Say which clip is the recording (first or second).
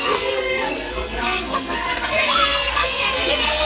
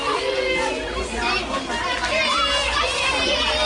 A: second